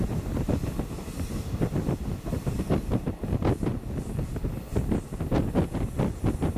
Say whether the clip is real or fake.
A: real